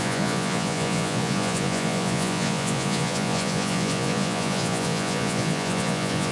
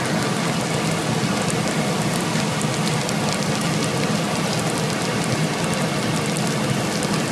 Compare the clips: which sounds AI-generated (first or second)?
first